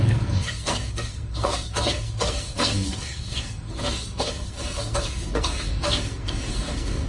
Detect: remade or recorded remade